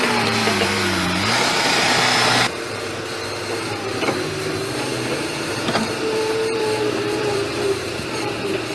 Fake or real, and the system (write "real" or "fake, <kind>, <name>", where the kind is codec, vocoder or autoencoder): fake, vocoder, BigVGAN v2